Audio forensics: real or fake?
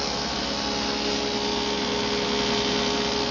real